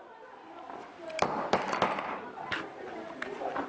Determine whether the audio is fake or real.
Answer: real